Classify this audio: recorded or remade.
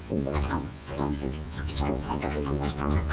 remade